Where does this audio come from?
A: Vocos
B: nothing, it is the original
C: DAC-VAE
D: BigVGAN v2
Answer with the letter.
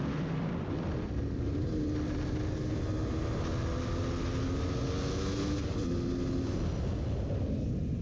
B